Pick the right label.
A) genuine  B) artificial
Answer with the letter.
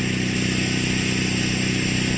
A